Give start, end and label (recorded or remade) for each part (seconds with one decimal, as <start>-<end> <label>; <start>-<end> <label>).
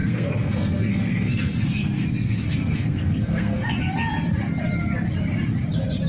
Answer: 0.0-3.7 remade; 3.7-6.1 recorded